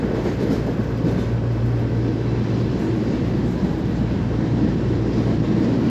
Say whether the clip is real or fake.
fake